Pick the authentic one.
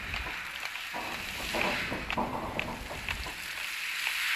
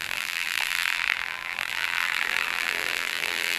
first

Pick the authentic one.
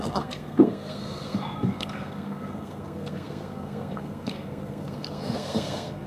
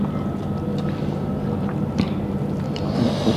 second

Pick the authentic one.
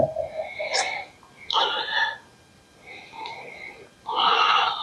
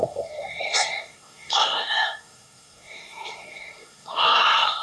first